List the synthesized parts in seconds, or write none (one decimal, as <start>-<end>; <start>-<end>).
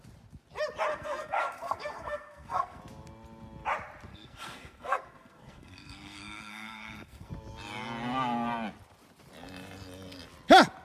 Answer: 0.9-2.8; 4.1-7.3